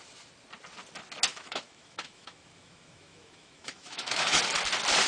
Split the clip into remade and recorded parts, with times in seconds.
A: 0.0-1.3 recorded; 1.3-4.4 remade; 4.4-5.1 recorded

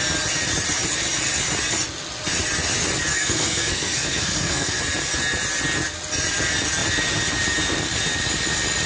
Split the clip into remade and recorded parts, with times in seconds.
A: 0.0-3.1 recorded; 3.1-4.8 remade; 4.8-8.9 recorded

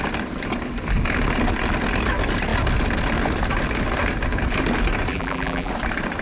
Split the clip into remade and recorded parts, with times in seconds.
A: 0.0-5.1 recorded; 5.1-5.7 remade; 5.7-6.2 recorded